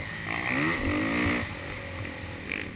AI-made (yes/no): no